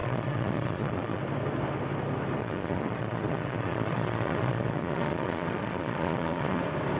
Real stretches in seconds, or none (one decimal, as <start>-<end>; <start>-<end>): 1.2-2.4; 6.6-7.0